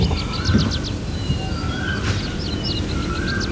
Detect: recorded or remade recorded